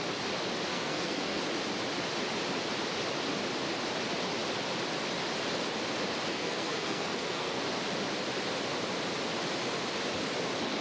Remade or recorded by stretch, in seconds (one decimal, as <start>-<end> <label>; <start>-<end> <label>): 0.0-0.7 recorded; 0.7-1.4 remade; 1.4-6.3 recorded; 6.3-7.6 remade; 7.6-10.8 recorded